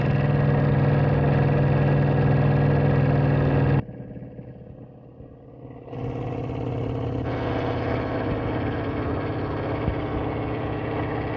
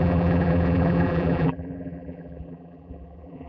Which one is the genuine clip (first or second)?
first